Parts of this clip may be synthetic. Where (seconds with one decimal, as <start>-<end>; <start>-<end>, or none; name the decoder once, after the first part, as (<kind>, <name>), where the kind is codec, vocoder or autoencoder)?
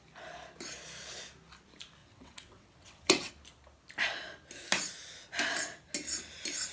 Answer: 2.0-3.3 (vocoder, WaveNeXt)